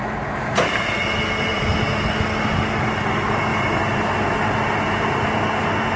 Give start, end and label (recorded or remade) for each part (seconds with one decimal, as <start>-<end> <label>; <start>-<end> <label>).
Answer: 0.0-3.0 remade; 3.0-3.5 recorded; 3.5-4.1 remade; 4.1-6.0 recorded

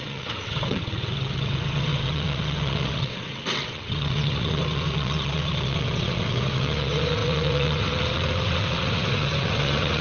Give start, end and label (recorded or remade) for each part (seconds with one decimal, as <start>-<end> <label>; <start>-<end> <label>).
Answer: 0.0-10.0 remade

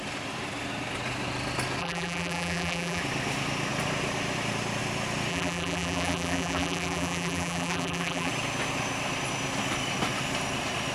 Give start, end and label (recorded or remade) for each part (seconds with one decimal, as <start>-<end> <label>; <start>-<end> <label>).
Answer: 0.0-1.8 recorded; 1.8-3.0 remade; 3.0-5.3 recorded; 5.3-8.3 remade; 8.3-10.9 recorded

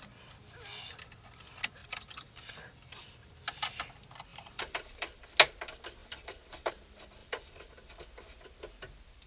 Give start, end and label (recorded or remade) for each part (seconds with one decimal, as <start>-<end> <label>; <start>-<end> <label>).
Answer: 0.0-1.8 recorded; 1.8-3.4 remade; 3.4-4.3 recorded; 4.3-5.2 remade; 5.2-6.0 recorded; 6.0-6.7 remade; 6.7-7.2 recorded; 7.2-7.9 remade; 7.9-9.3 recorded